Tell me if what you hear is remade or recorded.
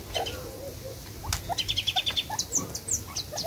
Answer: recorded